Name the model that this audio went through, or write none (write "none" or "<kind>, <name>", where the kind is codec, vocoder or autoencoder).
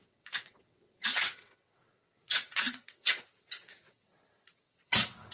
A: vocoder, WaveNeXt